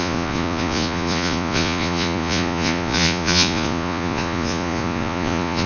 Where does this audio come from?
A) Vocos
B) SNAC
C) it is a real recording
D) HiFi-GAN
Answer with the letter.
A